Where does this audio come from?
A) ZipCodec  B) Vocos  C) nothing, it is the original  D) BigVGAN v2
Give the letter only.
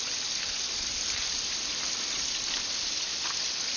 C